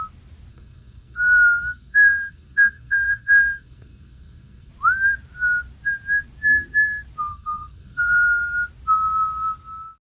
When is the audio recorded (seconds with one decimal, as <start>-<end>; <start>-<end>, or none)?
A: 0.0-0.5; 4.7-7.3; 8.4-10.2